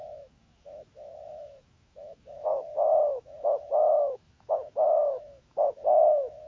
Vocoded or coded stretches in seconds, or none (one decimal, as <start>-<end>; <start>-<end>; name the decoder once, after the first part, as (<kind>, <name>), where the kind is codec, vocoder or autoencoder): 0.0-2.5 (autoencoder, DAC-VAE); 3.0-6.5